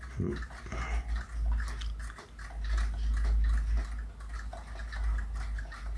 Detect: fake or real real